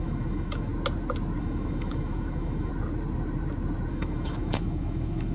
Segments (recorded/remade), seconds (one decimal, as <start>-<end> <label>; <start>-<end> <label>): 0.0-0.7 remade; 0.7-1.4 recorded; 1.4-2.7 remade; 2.7-3.9 recorded; 3.9-5.3 remade